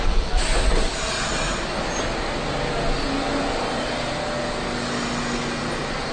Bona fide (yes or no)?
yes